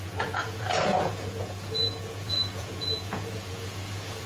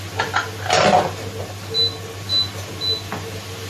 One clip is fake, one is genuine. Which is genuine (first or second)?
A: second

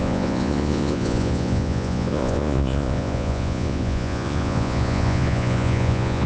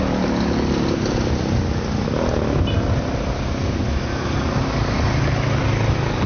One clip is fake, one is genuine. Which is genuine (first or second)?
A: second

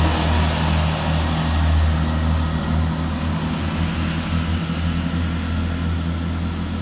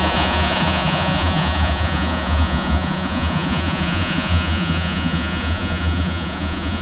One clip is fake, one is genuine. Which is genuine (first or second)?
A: first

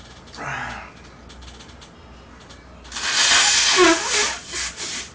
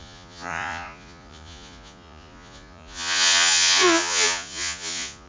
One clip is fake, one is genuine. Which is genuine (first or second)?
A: first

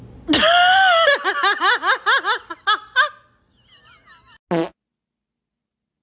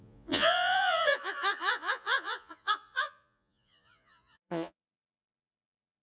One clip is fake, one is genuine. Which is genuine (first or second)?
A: first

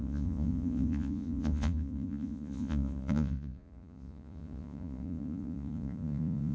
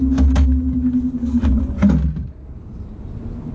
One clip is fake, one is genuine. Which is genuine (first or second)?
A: second